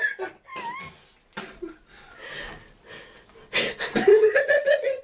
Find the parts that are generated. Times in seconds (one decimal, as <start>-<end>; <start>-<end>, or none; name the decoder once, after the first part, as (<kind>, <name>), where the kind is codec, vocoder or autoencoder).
4.1-5.0 (vocoder, HiFi-GAN)